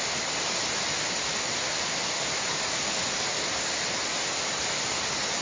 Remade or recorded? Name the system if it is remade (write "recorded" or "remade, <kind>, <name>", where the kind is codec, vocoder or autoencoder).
recorded